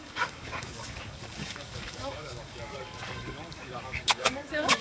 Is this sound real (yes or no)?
no